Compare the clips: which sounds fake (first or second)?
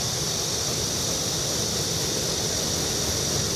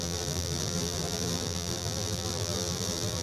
second